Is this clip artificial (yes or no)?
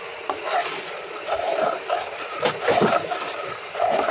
yes